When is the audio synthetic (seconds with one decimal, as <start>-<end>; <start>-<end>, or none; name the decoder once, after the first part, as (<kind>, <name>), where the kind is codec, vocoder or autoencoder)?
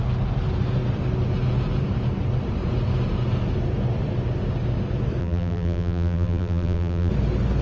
5.2-7.1 (vocoder, BigVGAN v2)